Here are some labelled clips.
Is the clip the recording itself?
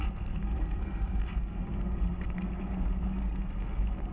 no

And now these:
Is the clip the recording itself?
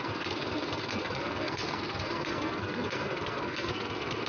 no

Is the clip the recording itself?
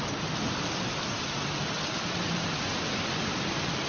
yes